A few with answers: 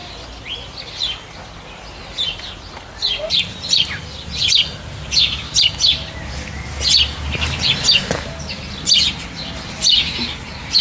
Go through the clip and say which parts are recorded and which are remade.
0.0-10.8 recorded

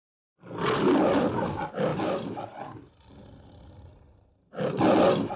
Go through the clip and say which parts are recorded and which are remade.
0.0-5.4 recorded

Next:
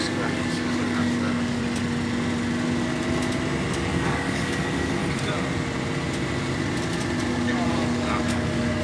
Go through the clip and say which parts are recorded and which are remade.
0.0-1.6 remade; 1.6-3.7 recorded; 3.7-5.0 remade; 5.0-7.3 recorded; 7.3-8.8 remade

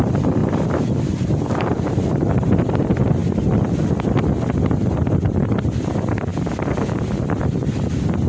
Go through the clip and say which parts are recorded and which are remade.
0.0-0.4 recorded; 0.4-2.7 remade; 2.7-8.3 recorded